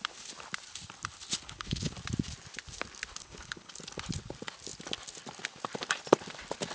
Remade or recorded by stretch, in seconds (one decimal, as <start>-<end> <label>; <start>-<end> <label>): 0.0-1.3 recorded; 1.3-1.9 remade; 1.9-3.2 recorded; 3.2-3.7 remade; 3.7-6.7 recorded